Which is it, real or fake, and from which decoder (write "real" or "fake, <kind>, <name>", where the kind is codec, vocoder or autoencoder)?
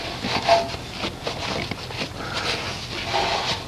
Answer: real